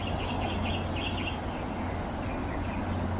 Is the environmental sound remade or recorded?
recorded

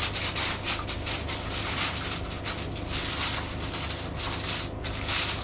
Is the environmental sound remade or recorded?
recorded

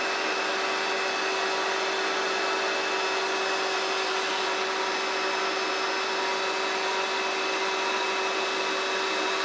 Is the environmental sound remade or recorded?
recorded